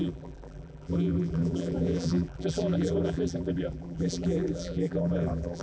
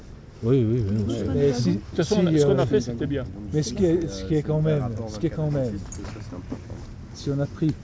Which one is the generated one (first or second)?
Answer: first